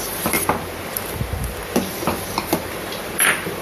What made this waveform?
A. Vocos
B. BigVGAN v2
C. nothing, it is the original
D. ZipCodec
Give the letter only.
B